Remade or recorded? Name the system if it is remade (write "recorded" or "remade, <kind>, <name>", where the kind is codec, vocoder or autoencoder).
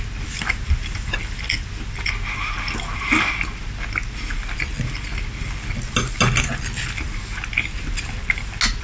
recorded